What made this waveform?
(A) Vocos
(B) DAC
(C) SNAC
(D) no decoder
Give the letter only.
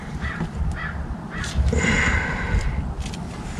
D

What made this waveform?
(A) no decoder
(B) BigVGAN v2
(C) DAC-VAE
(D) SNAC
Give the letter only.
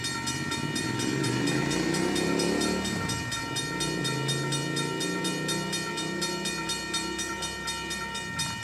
A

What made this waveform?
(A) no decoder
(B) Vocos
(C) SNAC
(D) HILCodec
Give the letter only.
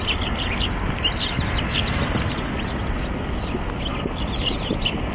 A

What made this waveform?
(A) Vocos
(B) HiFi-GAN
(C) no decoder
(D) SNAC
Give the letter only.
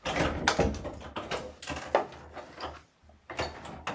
C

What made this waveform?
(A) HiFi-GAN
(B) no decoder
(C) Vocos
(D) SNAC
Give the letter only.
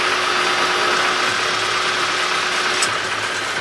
B